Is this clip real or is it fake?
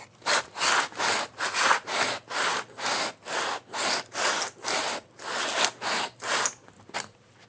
real